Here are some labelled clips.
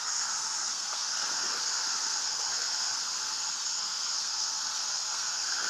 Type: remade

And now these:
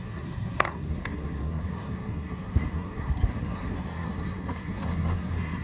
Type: remade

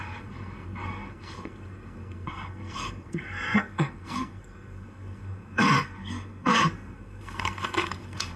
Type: remade